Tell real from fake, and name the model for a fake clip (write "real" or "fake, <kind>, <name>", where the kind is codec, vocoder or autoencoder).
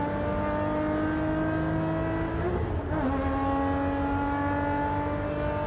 real